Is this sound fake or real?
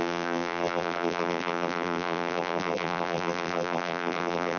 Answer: fake